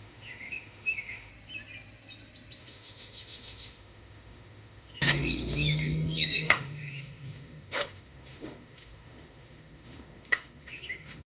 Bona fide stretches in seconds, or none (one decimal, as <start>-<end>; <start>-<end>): 1.3-2.6